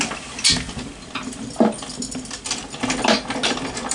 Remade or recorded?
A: recorded